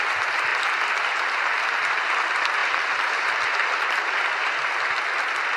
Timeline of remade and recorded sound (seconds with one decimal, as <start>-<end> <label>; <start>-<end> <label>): 0.0-5.6 recorded